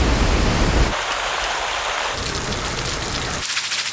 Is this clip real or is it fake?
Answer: real